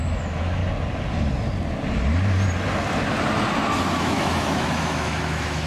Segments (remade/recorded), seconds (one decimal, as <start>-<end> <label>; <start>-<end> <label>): 0.0-0.6 remade; 0.6-4.0 recorded; 4.0-5.7 remade